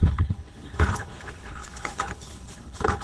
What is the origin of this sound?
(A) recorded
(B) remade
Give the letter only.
B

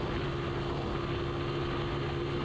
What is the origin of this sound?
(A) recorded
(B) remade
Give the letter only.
A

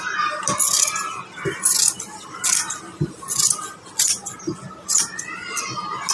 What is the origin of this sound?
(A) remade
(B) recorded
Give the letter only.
B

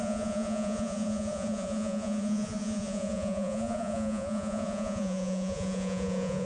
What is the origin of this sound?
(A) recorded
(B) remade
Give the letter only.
B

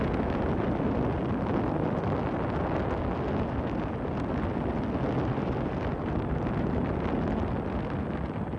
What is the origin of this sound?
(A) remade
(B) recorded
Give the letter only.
B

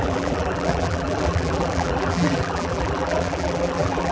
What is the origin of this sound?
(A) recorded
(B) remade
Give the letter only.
B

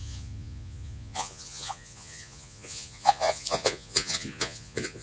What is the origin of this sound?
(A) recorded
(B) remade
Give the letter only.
B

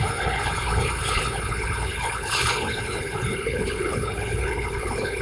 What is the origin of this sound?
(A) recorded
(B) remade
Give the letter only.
B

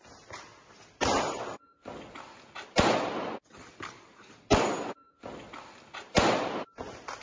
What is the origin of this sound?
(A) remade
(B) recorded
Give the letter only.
B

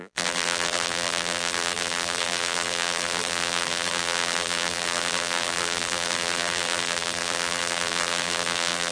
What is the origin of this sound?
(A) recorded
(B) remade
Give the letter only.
B